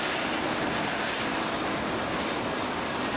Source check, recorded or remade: recorded